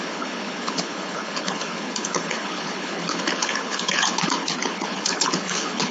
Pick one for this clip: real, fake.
fake